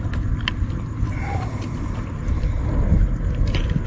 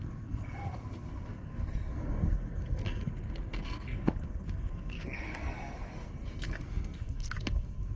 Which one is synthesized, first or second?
second